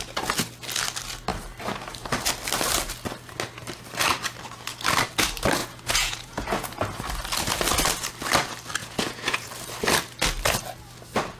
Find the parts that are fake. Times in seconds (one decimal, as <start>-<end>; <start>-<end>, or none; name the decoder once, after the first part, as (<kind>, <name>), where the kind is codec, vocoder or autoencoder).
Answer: 5.6-6.8 (vocoder, Vocos); 8.8-9.5

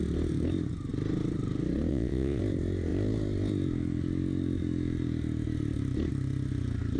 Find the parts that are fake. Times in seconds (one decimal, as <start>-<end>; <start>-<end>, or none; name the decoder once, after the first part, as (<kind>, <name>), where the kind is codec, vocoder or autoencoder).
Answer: 1.9-2.4 (vocoder, Vocos)

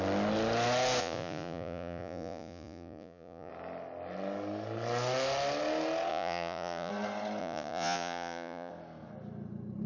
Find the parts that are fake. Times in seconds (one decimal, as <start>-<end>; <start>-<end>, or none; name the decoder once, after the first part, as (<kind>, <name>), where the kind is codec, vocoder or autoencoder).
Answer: 1.0-3.5 (vocoder, Vocos); 6.1-6.9; 7.4-8.7

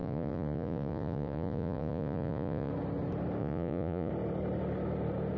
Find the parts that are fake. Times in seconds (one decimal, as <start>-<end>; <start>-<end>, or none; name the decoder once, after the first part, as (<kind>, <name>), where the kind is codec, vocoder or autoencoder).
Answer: 0.0-2.7 (vocoder, Vocos); 3.4-4.1

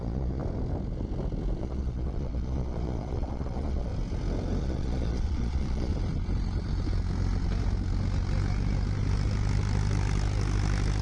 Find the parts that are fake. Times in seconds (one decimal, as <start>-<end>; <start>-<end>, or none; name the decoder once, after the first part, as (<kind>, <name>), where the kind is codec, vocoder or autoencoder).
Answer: 0.0-0.4 (vocoder, Vocos); 1.6-3.9; 4.6-5.9

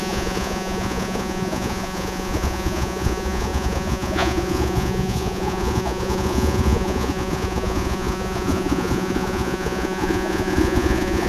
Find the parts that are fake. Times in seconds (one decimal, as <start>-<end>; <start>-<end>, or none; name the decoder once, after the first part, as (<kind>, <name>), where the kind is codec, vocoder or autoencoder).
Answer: 0.0-11.3 (vocoder, Vocos)

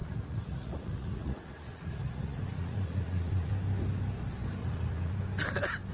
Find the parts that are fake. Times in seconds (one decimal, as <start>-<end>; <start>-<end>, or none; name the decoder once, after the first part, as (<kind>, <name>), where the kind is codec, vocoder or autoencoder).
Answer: 0.0-3.5 (vocoder, Vocos); 4.6-5.1

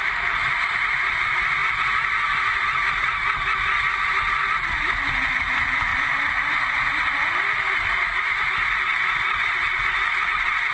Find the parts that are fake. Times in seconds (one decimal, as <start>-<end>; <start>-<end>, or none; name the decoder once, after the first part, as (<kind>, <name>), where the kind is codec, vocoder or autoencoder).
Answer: none